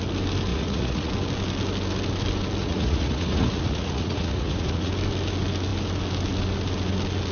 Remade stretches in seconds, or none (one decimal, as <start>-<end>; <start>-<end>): 0.5-1.1; 2.6-4.9